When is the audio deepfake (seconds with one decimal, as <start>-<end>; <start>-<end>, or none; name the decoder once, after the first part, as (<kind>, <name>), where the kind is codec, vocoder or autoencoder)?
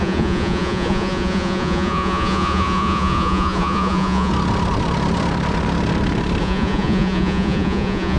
0.0-4.3 (vocoder, Vocos); 6.4-8.2